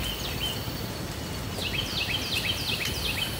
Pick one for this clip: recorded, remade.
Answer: recorded